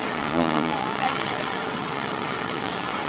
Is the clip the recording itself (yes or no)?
no